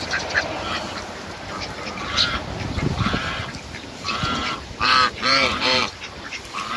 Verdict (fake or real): fake